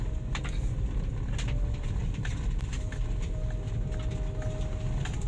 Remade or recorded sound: recorded